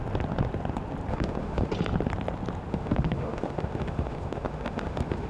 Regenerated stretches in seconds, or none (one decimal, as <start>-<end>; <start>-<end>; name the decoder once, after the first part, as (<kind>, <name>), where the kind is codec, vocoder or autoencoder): 1.1-1.7 (autoencoder, DAC-VAE); 2.7-5.3